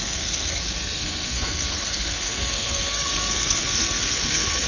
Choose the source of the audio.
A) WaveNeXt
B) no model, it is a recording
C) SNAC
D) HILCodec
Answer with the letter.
C